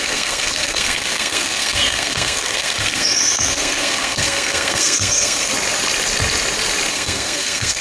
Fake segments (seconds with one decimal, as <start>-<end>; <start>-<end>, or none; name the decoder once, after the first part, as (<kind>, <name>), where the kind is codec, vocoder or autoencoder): 0.0-5.5 (codec, SNAC); 6.9-7.8